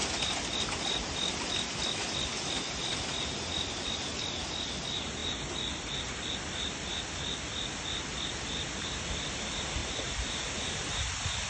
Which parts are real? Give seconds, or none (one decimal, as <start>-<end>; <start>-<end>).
0.0-9.8; 10.9-11.5